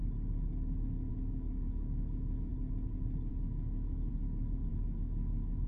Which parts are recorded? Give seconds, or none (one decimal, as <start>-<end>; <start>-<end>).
0.0-1.1; 2.5-3.3; 4.1-4.7